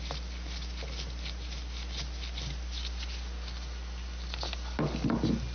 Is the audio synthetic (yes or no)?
no